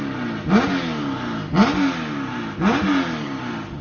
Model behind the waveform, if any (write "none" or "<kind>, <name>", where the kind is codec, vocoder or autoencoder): none